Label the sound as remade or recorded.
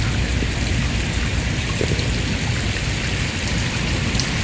recorded